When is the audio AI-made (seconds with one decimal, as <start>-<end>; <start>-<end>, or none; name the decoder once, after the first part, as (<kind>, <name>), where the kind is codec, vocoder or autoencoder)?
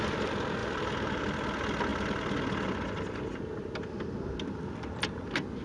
0.6-1.2 (vocoder, BigVGAN v2)